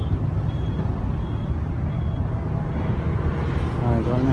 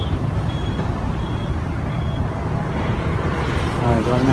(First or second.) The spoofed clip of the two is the second